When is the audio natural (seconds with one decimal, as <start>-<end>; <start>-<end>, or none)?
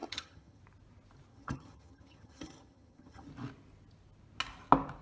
0.6-1.3; 3.3-5.0